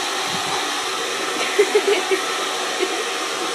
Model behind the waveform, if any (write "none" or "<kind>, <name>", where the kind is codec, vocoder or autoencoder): none